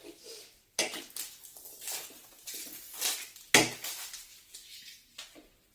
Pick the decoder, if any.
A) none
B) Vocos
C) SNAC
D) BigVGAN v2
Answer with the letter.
A